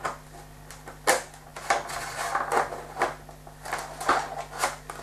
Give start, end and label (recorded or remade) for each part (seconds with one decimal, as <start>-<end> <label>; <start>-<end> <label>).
0.0-5.0 recorded